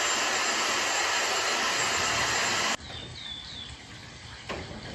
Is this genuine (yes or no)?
yes